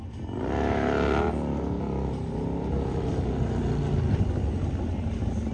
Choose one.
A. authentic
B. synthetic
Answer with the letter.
A